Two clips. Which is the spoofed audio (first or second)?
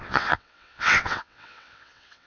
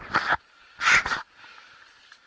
first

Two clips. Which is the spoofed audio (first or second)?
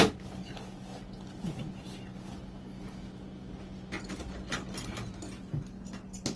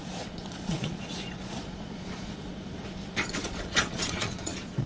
second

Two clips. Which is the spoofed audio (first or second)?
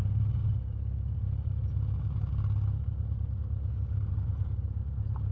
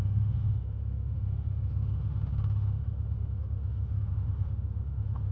second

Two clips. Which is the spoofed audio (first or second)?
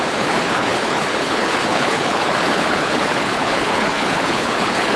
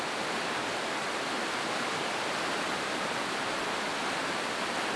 first